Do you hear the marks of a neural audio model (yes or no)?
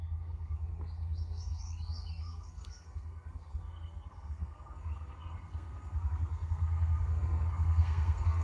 yes